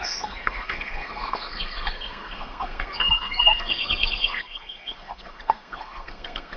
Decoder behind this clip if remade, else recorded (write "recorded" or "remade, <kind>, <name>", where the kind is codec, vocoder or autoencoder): remade, codec, SNAC